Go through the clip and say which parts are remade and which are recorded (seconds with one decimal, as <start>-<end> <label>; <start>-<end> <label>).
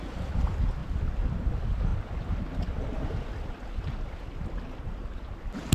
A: 0.0-5.7 recorded